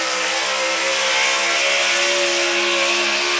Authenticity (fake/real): real